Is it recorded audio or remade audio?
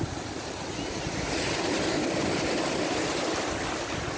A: recorded